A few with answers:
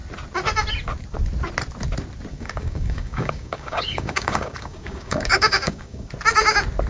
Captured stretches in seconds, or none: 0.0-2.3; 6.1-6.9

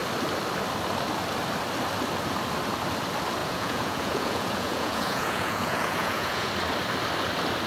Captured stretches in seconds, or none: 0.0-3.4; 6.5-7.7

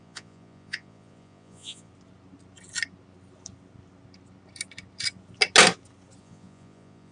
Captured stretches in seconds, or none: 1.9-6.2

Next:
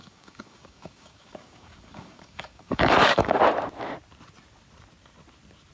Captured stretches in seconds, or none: 3.4-5.7